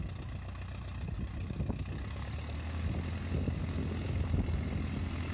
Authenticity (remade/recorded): recorded